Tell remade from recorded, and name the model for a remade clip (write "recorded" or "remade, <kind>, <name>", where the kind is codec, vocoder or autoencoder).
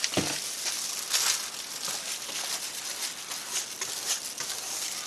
recorded